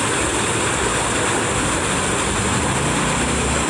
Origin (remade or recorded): recorded